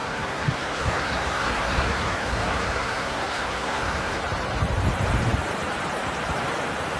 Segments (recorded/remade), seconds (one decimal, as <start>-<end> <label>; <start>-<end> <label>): 0.0-4.2 remade; 4.2-7.0 recorded